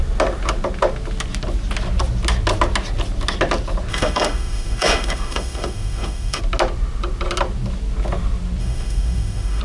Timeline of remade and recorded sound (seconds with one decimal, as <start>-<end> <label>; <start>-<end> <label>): 0.0-3.9 recorded; 3.9-6.4 remade; 6.4-8.6 recorded; 8.6-9.6 remade